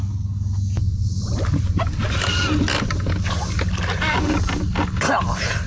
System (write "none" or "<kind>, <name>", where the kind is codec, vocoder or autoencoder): none